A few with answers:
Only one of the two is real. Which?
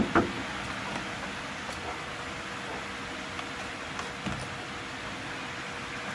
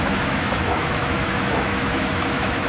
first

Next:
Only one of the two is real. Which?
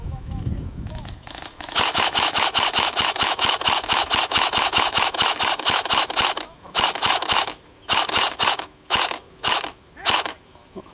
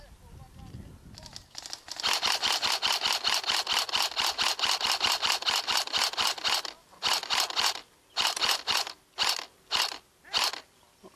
second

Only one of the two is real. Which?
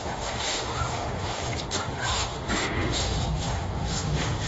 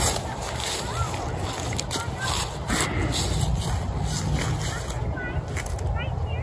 second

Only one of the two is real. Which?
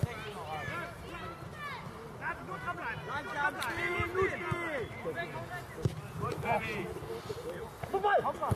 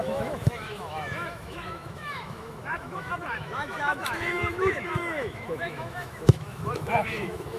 first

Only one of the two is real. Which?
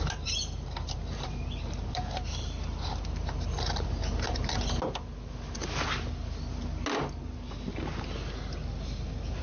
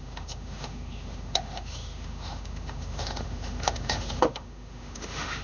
first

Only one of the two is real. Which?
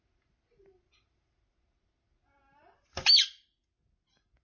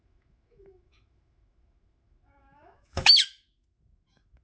first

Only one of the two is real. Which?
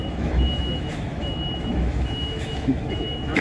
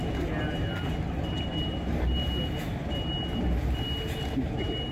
second